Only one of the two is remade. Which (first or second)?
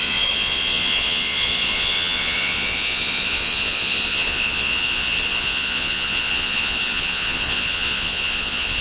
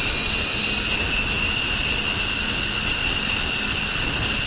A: first